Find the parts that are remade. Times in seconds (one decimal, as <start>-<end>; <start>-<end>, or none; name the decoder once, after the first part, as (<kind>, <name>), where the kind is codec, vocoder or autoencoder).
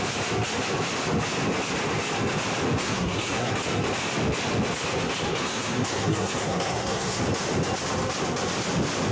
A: 2.8-3.5 (codec, SNAC); 5.4-7.2